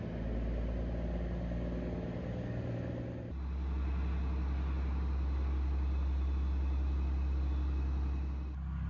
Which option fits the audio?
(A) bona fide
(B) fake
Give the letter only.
A